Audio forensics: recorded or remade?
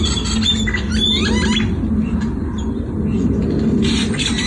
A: recorded